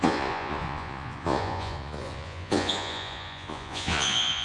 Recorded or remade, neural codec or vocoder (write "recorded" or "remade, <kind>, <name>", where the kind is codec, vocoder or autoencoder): remade, vocoder, Vocos